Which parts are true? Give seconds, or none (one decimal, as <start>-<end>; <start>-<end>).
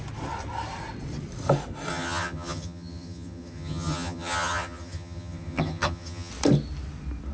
0.0-1.9; 6.3-7.3